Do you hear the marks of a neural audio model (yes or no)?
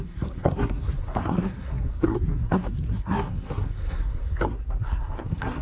yes